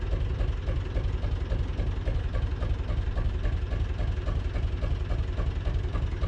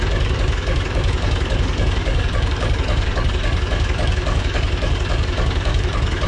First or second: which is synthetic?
second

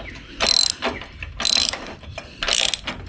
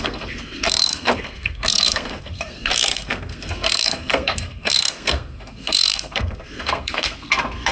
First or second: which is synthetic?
second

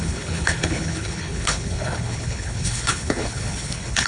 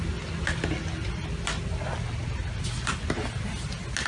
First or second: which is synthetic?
first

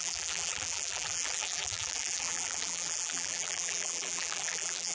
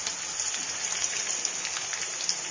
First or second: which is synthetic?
first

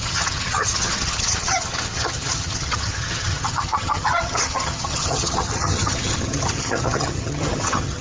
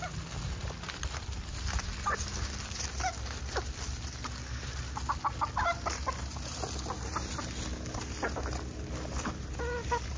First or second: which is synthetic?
first